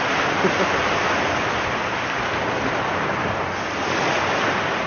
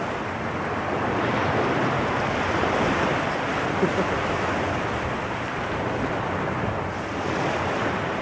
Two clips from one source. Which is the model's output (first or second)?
second